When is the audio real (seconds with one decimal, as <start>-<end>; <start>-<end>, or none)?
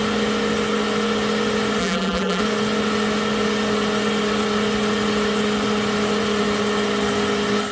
0.0-1.8; 2.4-7.7